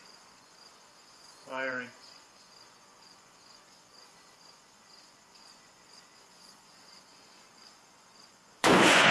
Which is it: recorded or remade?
remade